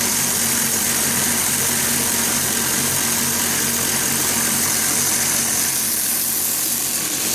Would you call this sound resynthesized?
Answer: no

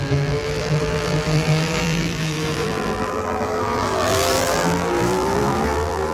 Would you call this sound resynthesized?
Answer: yes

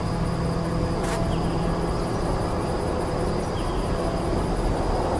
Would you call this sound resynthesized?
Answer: no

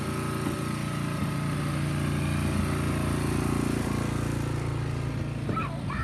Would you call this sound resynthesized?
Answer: no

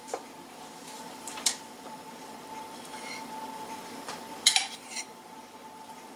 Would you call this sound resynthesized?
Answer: yes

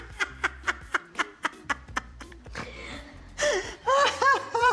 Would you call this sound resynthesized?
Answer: yes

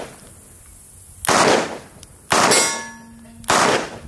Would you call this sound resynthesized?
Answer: no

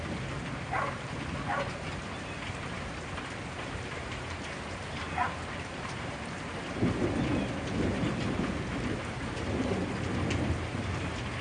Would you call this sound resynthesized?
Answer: yes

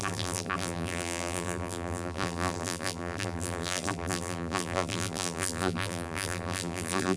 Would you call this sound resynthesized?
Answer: yes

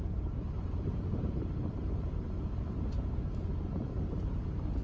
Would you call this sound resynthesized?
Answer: yes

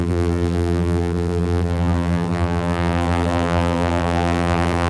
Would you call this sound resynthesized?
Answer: yes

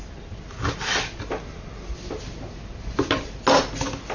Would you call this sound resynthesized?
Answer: no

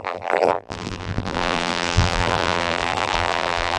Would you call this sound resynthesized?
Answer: yes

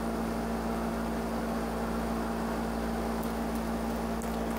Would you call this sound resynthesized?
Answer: no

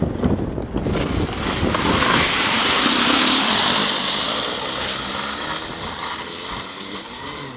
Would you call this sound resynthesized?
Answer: no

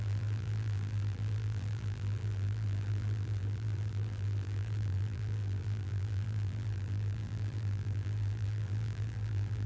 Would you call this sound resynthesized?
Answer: yes